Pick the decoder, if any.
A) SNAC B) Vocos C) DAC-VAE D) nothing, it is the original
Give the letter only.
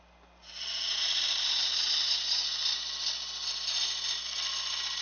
D